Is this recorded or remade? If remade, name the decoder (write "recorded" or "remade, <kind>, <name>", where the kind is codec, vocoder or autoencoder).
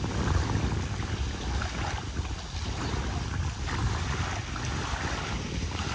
recorded